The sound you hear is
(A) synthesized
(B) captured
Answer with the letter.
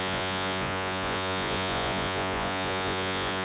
A